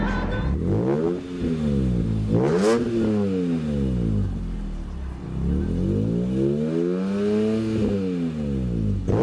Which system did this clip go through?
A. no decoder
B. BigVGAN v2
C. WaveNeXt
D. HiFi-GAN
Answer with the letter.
A